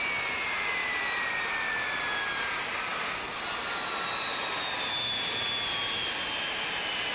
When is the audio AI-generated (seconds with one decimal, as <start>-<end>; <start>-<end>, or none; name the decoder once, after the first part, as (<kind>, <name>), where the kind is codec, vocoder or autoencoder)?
none